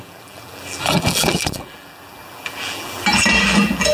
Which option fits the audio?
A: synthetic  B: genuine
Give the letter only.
A